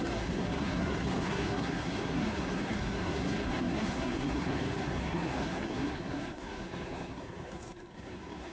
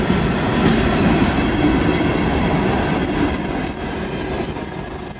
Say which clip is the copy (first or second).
first